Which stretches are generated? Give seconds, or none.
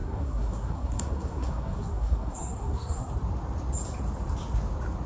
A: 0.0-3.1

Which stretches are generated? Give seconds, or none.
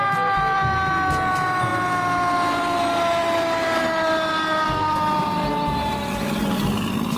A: none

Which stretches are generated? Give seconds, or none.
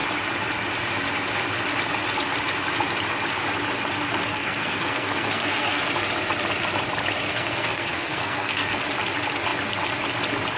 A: 4.3-5.8; 7.3-8.8